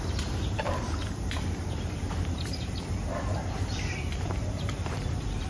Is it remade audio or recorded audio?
remade